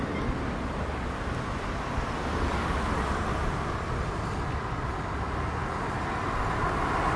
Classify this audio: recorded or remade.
recorded